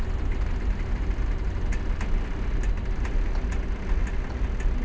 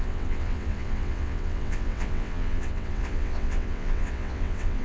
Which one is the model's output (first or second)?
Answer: second